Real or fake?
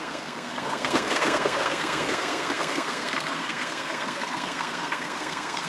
fake